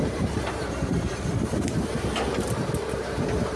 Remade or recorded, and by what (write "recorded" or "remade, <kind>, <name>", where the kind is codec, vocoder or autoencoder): remade, vocoder, BigVGAN v2